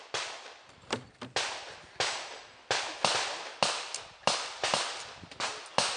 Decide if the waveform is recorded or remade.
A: recorded